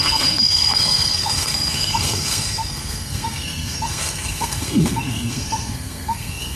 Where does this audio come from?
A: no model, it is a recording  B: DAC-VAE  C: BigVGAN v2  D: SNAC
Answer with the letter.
D